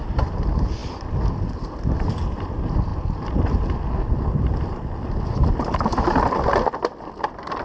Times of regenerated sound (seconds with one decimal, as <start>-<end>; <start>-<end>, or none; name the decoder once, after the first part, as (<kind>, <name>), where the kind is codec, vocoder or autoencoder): 0.0-2.9 (vocoder, BigVGAN v2); 6.4-7.6